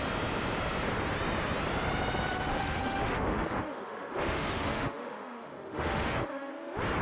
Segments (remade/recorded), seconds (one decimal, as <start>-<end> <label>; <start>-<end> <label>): 0.0-2.3 recorded; 2.3-6.5 remade; 6.5-7.0 recorded